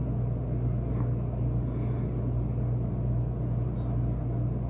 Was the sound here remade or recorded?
recorded